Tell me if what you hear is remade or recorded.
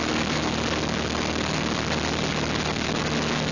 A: recorded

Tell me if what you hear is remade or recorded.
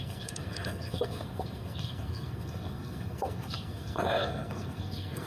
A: remade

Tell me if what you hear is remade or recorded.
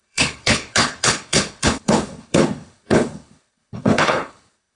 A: remade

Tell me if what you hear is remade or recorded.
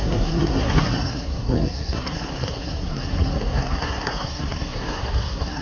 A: remade